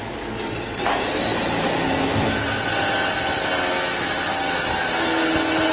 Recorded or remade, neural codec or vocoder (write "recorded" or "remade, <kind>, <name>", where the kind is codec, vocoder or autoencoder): recorded